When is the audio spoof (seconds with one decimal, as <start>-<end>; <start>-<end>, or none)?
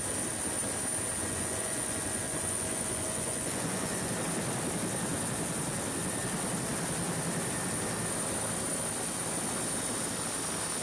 1.2-4.1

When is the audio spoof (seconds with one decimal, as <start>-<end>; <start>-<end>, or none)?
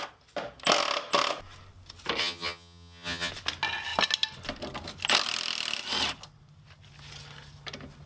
2.2-3.3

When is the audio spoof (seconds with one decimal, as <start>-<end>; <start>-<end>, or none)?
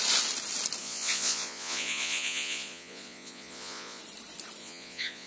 0.8-4.0; 4.6-5.3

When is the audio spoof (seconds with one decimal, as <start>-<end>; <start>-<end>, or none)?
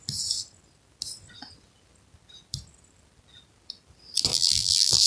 4.3-5.1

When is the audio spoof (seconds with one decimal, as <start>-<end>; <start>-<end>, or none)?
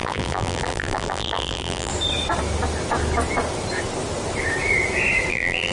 0.0-1.9; 5.3-5.7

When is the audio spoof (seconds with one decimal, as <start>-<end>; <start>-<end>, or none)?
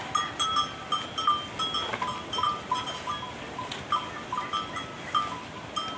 none